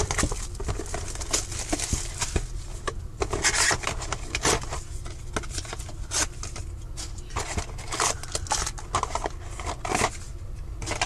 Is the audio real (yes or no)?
yes